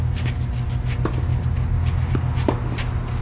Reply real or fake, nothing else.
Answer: real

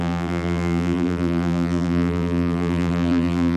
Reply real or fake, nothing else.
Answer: fake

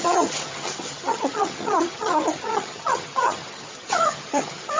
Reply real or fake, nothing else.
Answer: fake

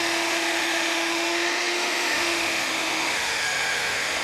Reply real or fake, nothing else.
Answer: fake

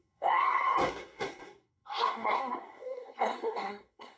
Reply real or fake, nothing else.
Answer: fake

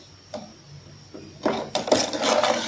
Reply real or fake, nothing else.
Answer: real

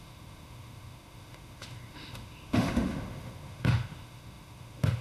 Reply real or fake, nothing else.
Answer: fake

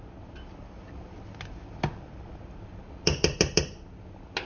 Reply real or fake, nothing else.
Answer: real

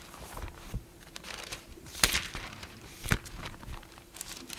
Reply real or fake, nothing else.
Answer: fake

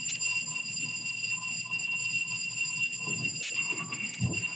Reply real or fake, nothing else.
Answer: real